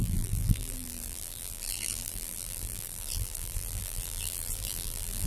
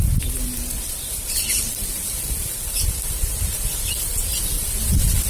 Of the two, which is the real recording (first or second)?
second